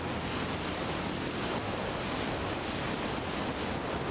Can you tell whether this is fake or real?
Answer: real